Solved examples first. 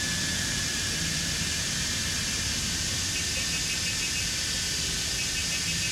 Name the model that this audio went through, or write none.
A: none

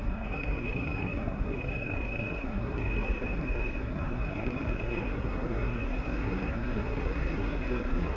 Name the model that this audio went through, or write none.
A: codec, SNAC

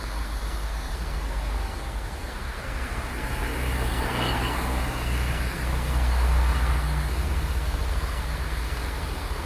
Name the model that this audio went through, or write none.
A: codec, SNAC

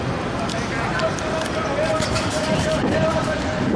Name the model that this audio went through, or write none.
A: none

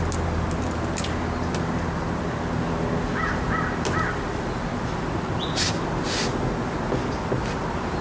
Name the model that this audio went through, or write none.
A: none